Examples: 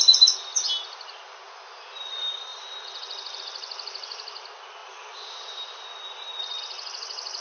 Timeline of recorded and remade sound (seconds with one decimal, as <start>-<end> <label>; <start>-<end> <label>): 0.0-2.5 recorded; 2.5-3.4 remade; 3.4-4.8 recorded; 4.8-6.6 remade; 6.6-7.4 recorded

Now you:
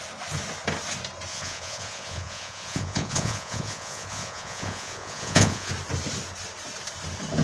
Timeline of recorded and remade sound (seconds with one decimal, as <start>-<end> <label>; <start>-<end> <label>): 0.0-1.3 recorded; 1.3-5.7 remade; 5.7-7.4 recorded

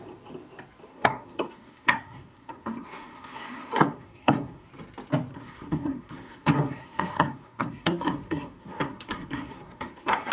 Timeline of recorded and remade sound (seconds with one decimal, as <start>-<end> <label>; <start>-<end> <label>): 0.0-0.9 recorded; 0.9-4.7 remade; 4.7-5.3 recorded; 5.3-10.3 remade